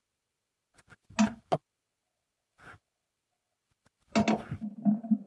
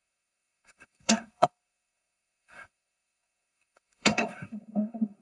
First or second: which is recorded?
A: first